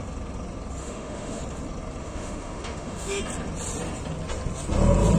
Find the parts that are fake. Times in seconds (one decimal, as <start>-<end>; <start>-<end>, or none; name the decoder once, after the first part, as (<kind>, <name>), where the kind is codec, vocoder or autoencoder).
0.8-1.4 (autoencoder, DAC-VAE); 2.0-3.2

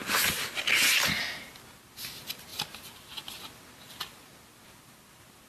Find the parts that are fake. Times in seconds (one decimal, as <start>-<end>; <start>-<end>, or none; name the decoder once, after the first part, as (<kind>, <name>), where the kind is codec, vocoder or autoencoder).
none

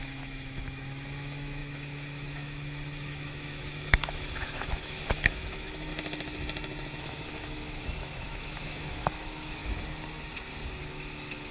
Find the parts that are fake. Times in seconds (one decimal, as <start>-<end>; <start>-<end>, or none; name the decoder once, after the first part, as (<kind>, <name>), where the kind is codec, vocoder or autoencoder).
0.0-5.9 (autoencoder, DAC-VAE); 7.0-9.6; 10.8-11.5

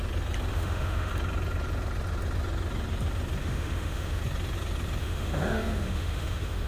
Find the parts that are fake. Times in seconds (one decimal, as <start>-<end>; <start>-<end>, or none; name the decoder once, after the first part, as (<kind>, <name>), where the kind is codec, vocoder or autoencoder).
0.5-1.1 (autoencoder, DAC-VAE); 3.4-4.2; 5.0-6.7

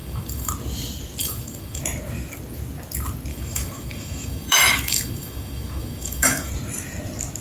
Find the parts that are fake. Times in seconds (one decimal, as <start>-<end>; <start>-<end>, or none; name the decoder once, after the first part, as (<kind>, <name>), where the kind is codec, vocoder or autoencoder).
0.0-0.5 (autoencoder, DAC-VAE); 1.2-1.8; 3.3-6.5